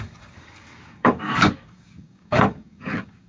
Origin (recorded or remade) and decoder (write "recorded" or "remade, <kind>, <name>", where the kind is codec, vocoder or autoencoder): remade, codec, DAC